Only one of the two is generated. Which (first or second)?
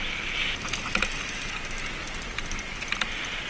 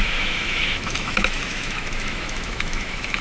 second